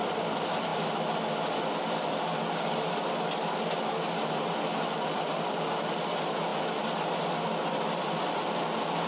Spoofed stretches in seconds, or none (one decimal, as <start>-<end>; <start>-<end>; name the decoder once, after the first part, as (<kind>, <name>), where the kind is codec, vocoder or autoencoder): none